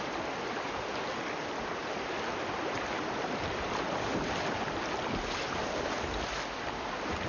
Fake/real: real